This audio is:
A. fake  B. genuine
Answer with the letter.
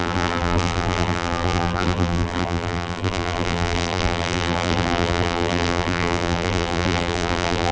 A